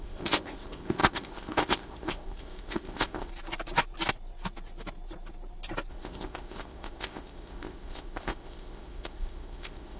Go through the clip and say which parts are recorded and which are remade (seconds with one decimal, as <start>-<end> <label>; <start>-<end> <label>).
0.0-3.3 remade; 3.3-5.9 recorded; 5.9-10.0 remade